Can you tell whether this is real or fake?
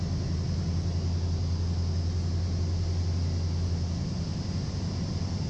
real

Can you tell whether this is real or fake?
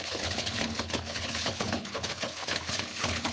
fake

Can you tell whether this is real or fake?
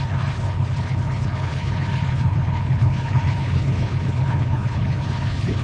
fake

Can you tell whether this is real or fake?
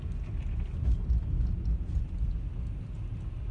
real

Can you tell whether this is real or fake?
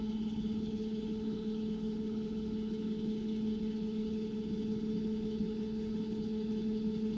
fake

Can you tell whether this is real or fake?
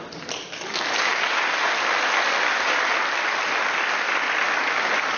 real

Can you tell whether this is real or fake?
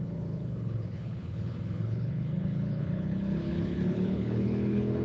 fake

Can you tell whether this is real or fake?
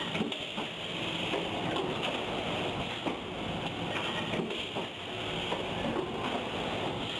real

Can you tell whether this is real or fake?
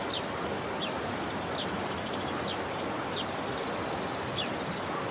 real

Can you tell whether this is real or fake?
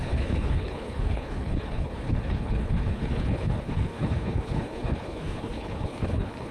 fake